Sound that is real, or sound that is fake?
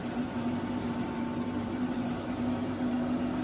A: real